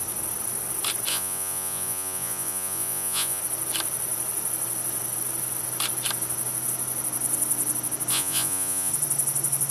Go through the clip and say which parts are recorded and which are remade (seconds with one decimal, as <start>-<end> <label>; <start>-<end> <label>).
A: 0.0-1.1 recorded; 1.1-3.4 remade; 3.4-8.1 recorded; 8.1-8.9 remade; 8.9-9.7 recorded